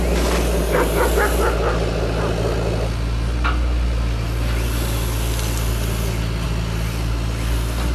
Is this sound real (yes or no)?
yes